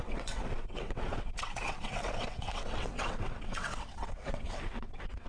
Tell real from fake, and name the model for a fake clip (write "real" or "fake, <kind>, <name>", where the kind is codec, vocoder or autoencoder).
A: fake, vocoder, WaveNeXt